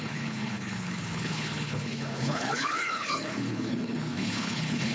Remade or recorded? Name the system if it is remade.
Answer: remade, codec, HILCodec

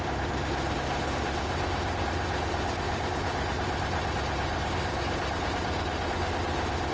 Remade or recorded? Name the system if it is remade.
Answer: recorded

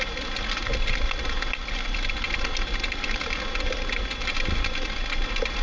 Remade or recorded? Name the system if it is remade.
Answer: recorded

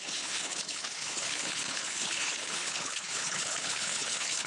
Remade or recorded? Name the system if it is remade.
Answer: remade, codec, HILCodec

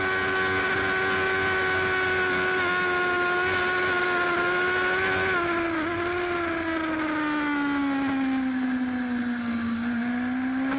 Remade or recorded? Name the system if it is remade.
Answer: recorded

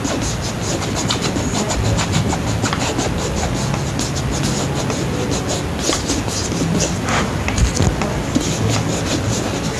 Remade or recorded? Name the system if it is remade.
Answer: recorded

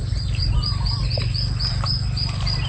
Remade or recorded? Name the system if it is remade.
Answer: recorded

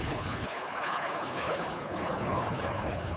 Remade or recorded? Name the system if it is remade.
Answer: remade, codec, HILCodec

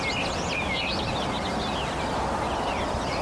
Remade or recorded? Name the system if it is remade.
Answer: recorded